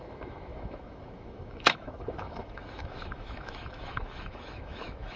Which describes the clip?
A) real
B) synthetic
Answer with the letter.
B